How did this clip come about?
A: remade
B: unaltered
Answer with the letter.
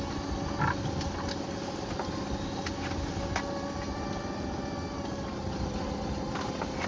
B